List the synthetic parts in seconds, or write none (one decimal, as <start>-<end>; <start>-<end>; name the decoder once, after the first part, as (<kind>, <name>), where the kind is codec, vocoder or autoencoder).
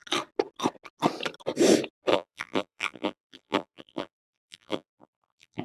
2.1-5.6 (vocoder, BigVGAN v2)